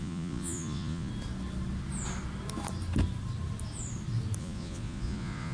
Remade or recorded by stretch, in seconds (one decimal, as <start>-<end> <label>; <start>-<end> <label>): 0.0-1.1 remade; 1.1-4.4 recorded; 4.4-5.5 remade